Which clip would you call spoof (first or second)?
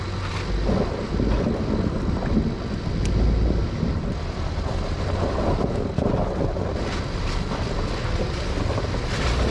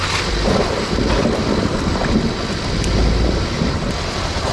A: second